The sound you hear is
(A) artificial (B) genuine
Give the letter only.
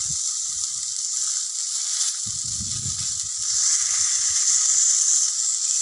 B